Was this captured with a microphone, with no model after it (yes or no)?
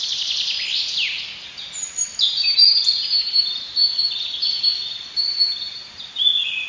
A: yes